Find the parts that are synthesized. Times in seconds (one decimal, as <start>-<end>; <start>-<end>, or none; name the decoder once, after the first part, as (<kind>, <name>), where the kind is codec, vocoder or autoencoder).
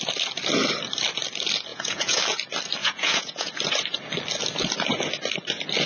1.7-2.2 (vocoder, Vocos); 2.8-3.5